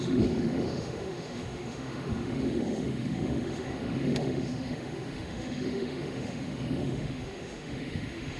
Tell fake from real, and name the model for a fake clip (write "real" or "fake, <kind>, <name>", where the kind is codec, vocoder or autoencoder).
fake, autoencoder, DAC-VAE